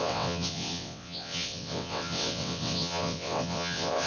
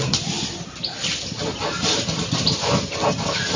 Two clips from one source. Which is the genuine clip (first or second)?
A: second